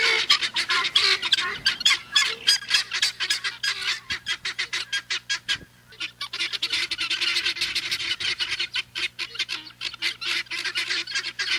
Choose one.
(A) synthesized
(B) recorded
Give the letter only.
B